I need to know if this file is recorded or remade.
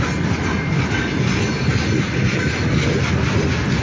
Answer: recorded